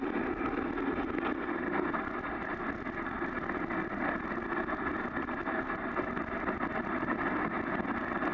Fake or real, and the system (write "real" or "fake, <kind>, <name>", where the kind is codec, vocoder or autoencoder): real